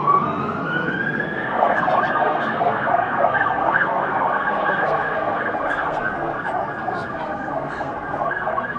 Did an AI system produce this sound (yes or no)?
yes